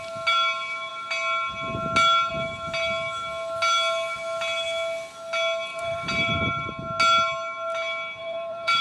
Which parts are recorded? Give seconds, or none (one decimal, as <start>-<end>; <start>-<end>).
0.0-5.7; 6.7-8.2